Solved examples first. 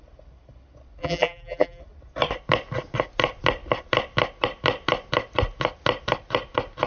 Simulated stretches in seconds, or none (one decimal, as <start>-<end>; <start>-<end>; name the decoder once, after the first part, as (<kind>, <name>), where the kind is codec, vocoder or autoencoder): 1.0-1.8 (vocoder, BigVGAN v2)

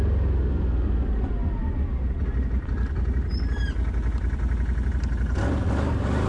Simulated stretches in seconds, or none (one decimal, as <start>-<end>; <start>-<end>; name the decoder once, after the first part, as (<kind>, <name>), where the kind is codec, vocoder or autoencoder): none

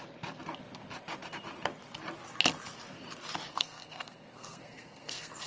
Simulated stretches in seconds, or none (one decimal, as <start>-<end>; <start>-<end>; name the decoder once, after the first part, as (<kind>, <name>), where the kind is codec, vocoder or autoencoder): 3.5-5.5 (codec, SNAC)